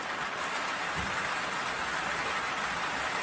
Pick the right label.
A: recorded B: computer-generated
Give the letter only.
A